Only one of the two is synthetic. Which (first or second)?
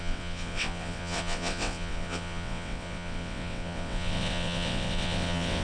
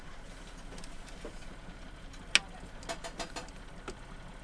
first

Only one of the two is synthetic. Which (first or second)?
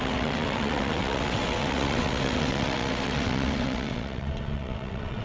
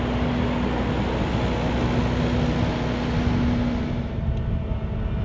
first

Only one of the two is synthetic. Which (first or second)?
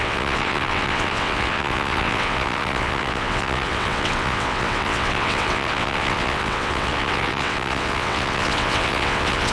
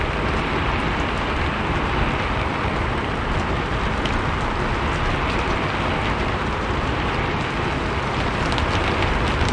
first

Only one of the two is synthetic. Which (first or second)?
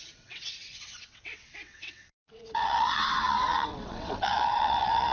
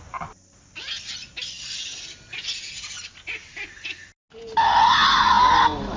first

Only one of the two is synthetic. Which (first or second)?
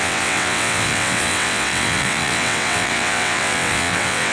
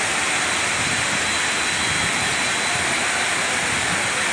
first